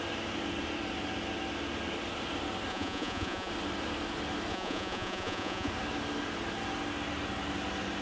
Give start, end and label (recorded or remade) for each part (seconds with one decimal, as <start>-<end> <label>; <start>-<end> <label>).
0.0-2.7 recorded; 2.7-3.5 remade; 3.5-4.5 recorded; 4.5-5.7 remade; 5.7-8.0 recorded